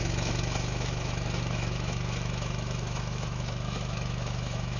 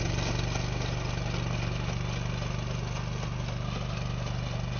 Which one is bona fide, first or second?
second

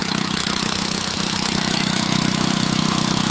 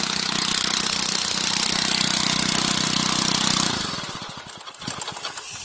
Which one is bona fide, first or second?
second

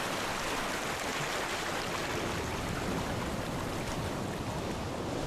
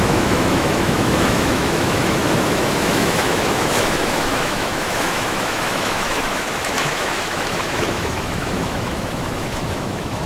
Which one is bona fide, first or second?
first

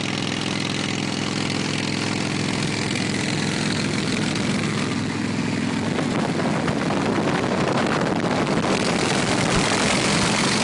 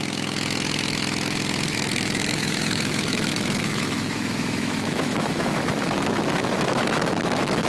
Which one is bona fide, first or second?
first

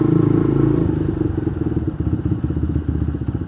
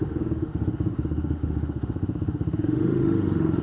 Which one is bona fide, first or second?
first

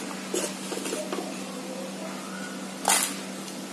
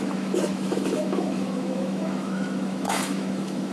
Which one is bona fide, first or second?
first